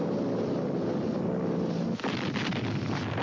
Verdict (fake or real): real